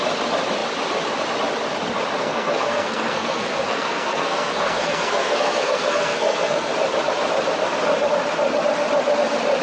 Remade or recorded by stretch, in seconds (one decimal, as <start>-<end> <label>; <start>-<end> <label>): 0.0-2.2 recorded; 2.2-6.7 remade; 6.7-9.6 recorded